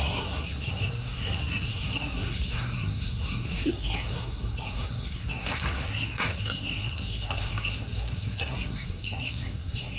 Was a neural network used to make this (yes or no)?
yes